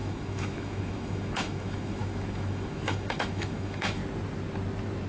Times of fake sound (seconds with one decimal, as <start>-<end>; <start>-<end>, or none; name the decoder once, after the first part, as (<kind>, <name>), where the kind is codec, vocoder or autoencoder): 0.0-4.0 (autoencoder, DAC-VAE)